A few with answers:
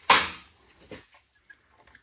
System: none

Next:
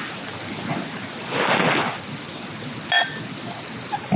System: none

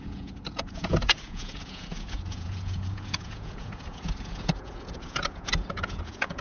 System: vocoder, Vocos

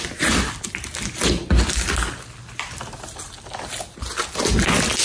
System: none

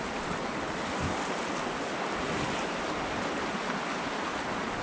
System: none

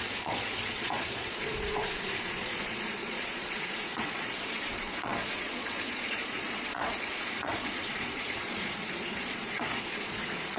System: vocoder, Vocos